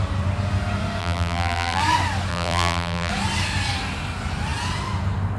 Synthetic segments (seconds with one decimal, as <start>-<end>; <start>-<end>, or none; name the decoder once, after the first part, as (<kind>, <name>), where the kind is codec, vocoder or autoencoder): 1.0-1.8 (vocoder, BigVGAN v2); 2.3-3.1